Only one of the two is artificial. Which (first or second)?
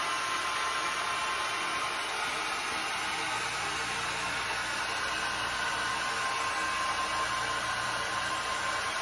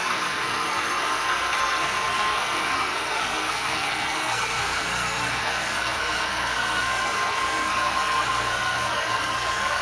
second